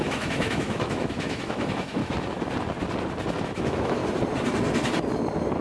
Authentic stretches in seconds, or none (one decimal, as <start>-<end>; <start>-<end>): 2.0-3.4; 4.0-5.6